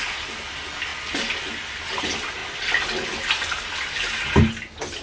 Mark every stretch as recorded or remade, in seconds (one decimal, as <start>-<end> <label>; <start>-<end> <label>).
0.0-5.0 recorded